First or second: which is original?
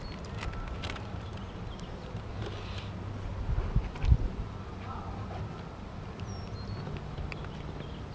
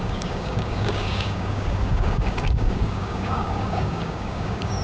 first